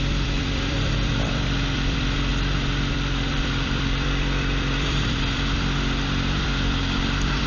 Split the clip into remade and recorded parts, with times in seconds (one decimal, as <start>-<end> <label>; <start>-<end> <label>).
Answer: 0.0-2.3 remade; 2.3-2.9 recorded; 2.9-7.5 remade